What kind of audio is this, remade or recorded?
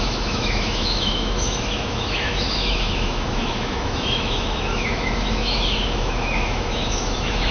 remade